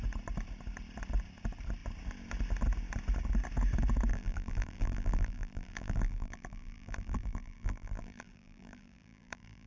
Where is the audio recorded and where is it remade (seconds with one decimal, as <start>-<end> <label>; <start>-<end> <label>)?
0.0-4.1 recorded; 4.1-9.7 remade